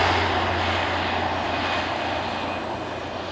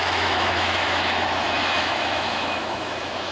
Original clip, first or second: first